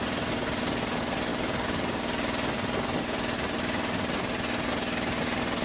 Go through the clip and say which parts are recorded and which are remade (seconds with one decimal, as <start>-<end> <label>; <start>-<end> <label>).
0.0-5.6 recorded